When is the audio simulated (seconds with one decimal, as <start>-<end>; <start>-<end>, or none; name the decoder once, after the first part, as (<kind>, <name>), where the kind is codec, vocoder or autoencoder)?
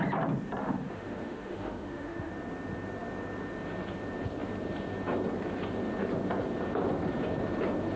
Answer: 0.6-2.3 (autoencoder, DAC-VAE)